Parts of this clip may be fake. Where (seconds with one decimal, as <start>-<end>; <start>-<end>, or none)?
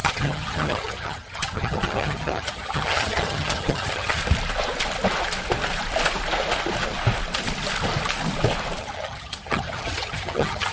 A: 0.0-4.2; 8.8-10.7